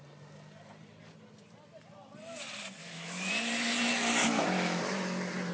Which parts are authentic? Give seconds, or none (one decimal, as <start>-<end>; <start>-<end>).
0.0-2.8; 3.3-4.2; 4.8-5.5

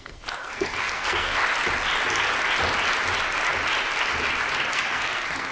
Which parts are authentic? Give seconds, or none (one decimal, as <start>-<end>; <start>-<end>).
1.4-4.7

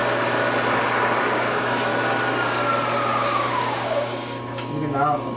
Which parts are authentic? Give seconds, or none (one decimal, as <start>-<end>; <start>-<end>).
0.0-1.2; 1.9-3.5

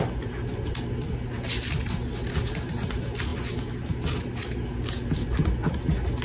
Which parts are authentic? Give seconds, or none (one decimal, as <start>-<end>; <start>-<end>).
0.0-6.2

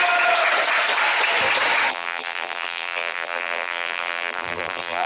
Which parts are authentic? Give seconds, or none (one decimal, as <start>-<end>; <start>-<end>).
0.0-1.9

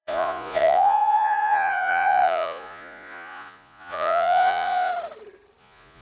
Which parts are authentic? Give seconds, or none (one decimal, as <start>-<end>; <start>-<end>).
4.9-5.6

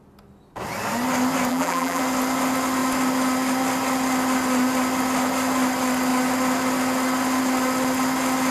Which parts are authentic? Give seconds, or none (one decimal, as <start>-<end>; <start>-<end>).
0.0-1.5; 2.0-8.5